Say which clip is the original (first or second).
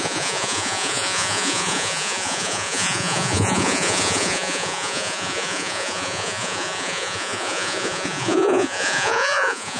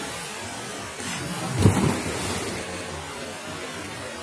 second